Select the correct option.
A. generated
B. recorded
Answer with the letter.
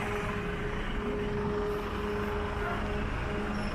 B